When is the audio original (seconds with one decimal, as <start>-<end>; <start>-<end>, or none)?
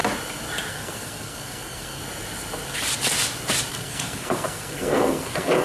0.0-0.7; 2.0-3.7